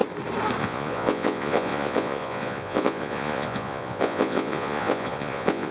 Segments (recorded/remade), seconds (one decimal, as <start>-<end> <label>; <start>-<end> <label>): 0.0-0.6 recorded; 0.6-5.7 remade